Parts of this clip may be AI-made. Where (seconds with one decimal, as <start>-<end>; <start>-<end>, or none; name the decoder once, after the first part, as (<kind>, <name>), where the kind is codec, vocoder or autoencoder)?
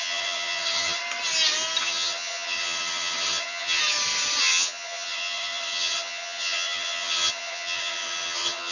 0.0-1.0 (vocoder, HiFi-GAN); 1.8-3.8; 4.4-8.7